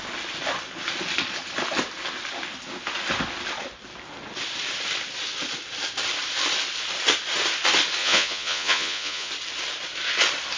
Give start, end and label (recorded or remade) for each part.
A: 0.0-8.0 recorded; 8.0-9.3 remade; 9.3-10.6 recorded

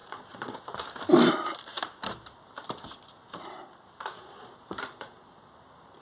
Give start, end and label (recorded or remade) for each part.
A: 0.0-0.6 remade; 0.6-4.2 recorded; 4.2-5.5 remade; 5.5-6.0 recorded

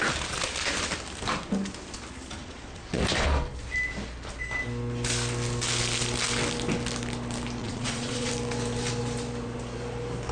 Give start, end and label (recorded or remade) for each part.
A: 0.0-2.4 recorded; 2.4-3.0 remade; 3.0-7.6 recorded; 7.6-8.3 remade; 8.3-10.3 recorded

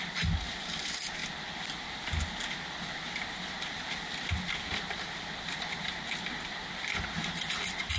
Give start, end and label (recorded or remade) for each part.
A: 0.0-8.0 recorded

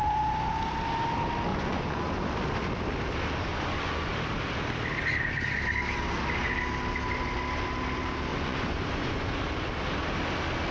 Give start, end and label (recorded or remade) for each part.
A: 0.0-1.5 recorded; 1.5-2.1 remade; 2.1-3.5 recorded; 3.5-4.1 remade; 4.1-8.3 recorded; 8.3-9.3 remade; 9.3-10.7 recorded